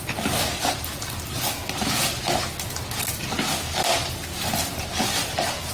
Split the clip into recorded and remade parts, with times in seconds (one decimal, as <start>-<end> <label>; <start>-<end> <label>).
0.0-4.0 recorded; 4.0-4.5 remade; 4.5-5.7 recorded